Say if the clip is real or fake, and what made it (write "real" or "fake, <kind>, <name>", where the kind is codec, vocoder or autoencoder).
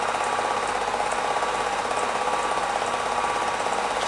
real